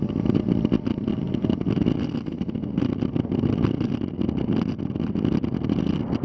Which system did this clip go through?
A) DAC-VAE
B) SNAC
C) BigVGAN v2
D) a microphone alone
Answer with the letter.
D